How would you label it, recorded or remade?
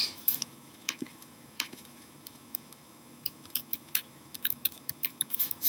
remade